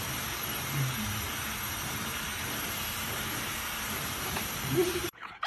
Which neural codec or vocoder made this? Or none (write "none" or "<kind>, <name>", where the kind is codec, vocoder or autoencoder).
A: vocoder, BigVGAN v2